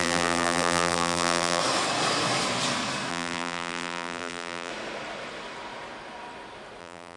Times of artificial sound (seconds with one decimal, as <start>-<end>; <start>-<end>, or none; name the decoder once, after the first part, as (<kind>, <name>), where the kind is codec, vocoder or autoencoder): 0.0-1.6 (vocoder, BigVGAN v2); 3.1-4.7; 6.8-7.2